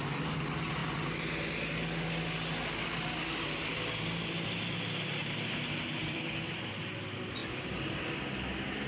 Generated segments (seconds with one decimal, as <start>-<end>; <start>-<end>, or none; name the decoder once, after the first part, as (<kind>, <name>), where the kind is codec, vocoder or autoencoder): 6.0-6.5 (codec, DAC)